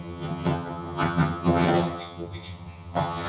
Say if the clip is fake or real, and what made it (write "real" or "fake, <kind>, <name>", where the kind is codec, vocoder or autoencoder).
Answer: fake, vocoder, HiFi-GAN